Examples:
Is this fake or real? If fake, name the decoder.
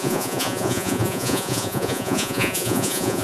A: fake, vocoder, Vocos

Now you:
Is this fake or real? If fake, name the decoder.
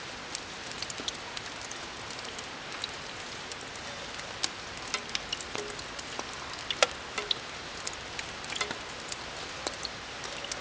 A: real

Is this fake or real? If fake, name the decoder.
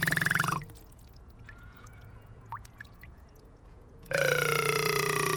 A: fake, vocoder, Vocos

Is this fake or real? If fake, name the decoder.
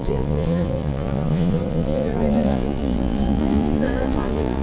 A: fake, vocoder, Vocos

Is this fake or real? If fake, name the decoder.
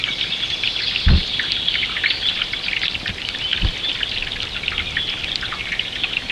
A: real